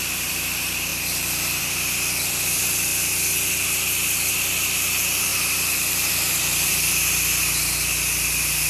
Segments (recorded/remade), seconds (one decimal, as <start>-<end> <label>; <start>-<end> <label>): 0.0-2.9 remade; 2.9-3.5 recorded; 3.5-8.7 remade